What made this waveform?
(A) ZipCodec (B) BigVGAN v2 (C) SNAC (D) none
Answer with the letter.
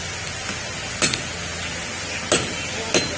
D